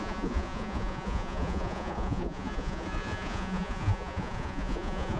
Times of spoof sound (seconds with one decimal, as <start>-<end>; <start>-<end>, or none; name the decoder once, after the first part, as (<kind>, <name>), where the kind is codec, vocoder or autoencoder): 0.0-5.2 (vocoder, Vocos)